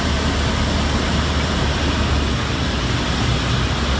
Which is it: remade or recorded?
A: recorded